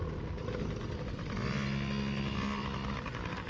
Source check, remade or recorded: recorded